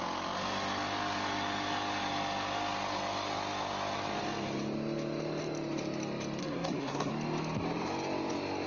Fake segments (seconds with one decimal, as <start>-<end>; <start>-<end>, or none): 6.4-7.1